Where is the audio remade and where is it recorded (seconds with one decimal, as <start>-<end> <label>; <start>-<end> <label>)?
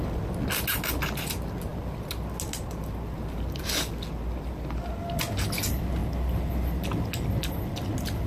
0.0-8.3 recorded